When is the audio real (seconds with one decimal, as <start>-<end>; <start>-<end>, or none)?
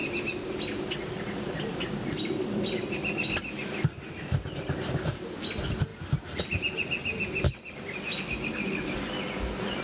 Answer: 0.0-9.8